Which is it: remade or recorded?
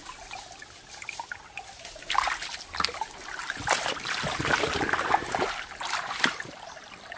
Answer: recorded